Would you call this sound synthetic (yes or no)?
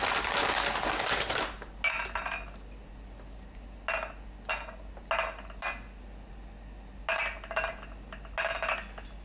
no